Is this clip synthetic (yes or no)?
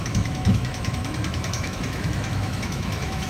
yes